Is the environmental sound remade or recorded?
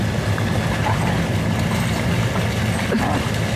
recorded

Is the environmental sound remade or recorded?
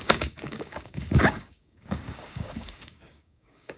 remade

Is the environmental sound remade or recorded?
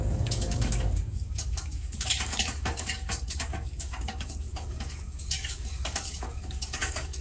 remade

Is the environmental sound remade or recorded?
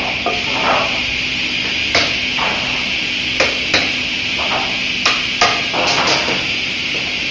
recorded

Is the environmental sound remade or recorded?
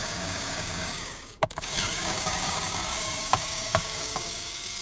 remade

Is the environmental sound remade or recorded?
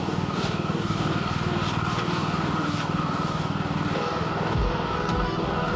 remade